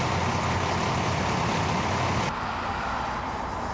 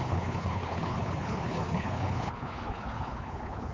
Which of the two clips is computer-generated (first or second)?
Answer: second